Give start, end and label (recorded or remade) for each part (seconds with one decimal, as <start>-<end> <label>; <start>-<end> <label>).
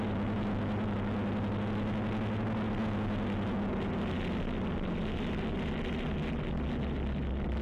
0.0-7.6 recorded